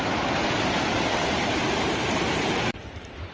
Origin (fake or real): real